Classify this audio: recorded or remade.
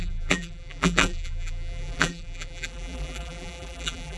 remade